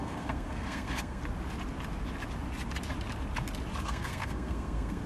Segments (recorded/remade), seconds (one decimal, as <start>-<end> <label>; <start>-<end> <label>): 0.0-1.2 remade; 1.2-3.8 recorded; 3.8-5.1 remade